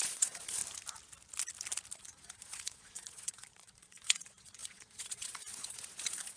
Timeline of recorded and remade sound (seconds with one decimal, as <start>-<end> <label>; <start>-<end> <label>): 0.0-0.6 remade; 0.6-2.0 recorded; 2.0-6.4 remade